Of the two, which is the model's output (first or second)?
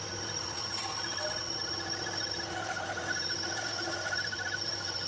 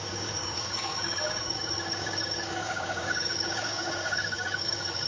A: second